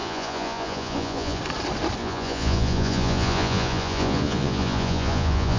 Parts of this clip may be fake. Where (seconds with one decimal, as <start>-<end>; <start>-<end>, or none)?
0.0-1.4; 2.0-5.6